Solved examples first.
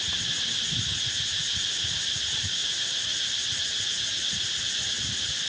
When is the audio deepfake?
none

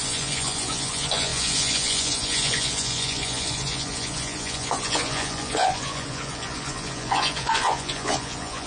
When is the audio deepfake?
0.0-8.7 (vocoder, Vocos)

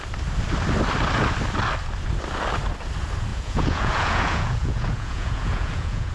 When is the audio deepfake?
3.3-6.1 (vocoder, Vocos)

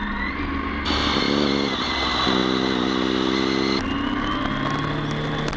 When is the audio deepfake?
none

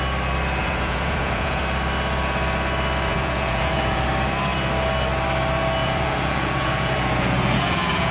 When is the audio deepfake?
0.6-1.6 (vocoder, Vocos); 3.1-4.0; 5.8-8.1

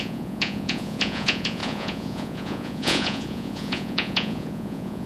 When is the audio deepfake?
0.0-5.1 (vocoder, Vocos)